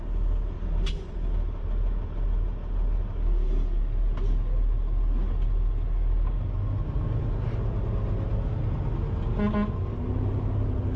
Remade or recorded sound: recorded